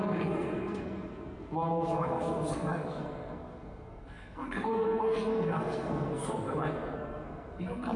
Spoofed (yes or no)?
yes